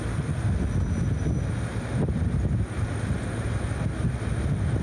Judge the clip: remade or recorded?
recorded